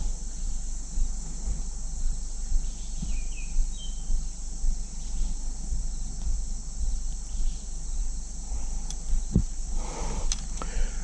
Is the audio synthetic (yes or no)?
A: no